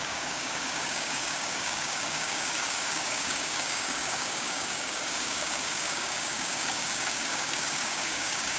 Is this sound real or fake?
fake